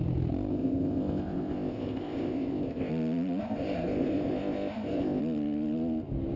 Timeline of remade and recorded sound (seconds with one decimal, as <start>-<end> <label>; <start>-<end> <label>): 0.0-0.5 recorded; 0.5-2.9 remade; 2.9-3.4 recorded; 3.4-5.2 remade; 5.2-6.4 recorded